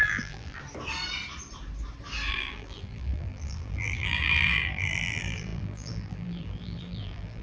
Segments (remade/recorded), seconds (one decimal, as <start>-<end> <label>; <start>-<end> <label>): 0.0-0.6 remade; 0.6-2.3 recorded; 2.3-7.4 remade